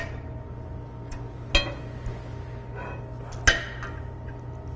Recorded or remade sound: recorded